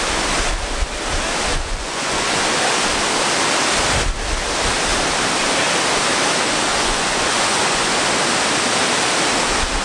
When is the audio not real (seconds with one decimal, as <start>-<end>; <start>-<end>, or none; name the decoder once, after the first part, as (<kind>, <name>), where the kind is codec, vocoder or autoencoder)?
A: 1.5-2.4 (vocoder, Vocos); 6.7-7.9